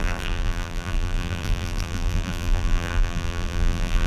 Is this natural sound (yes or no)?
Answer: no